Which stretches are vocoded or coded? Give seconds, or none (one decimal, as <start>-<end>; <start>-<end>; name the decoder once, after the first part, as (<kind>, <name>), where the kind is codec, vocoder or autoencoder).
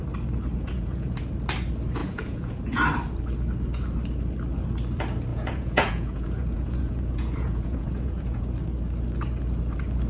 0.5-1.2 (vocoder, Vocos); 2.0-2.6; 5.3-8.4